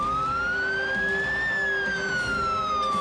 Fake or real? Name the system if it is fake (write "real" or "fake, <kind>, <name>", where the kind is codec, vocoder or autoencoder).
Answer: real